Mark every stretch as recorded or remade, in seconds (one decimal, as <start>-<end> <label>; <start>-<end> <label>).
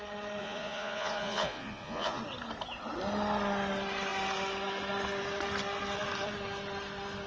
0.0-0.4 recorded; 0.4-2.2 remade; 2.2-7.3 recorded